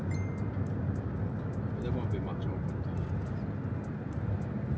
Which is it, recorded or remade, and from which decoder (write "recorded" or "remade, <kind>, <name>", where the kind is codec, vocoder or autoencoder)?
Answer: recorded